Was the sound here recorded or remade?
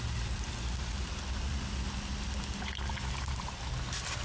recorded